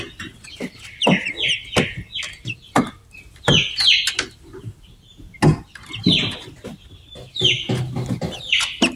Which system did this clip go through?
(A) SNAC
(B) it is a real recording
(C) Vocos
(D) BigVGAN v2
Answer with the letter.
B